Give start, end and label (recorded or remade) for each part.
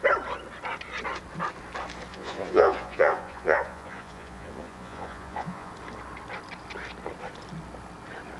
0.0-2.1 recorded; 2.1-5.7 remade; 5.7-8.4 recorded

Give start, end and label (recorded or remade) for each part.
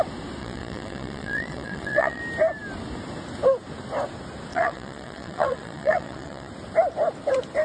0.0-0.4 recorded; 0.4-2.2 remade; 2.2-4.5 recorded; 4.5-6.5 remade; 6.5-7.6 recorded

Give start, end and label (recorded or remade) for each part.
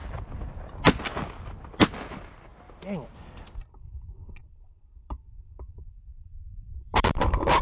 0.0-4.4 recorded; 4.4-5.3 remade; 5.3-6.1 recorded; 6.1-7.6 remade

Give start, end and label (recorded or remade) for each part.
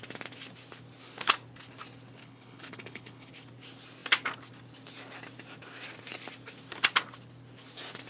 0.0-2.2 recorded; 2.2-3.3 remade; 3.3-8.1 recorded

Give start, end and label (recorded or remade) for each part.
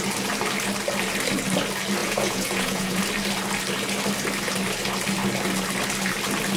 0.0-2.0 recorded; 2.0-3.0 remade; 3.0-6.6 recorded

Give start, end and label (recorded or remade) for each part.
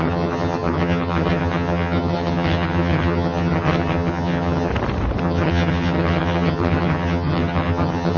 0.0-4.7 remade; 4.7-5.2 recorded; 5.2-8.2 remade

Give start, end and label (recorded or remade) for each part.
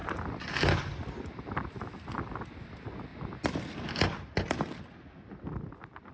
0.0-6.1 recorded